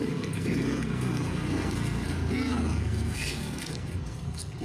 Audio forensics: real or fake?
fake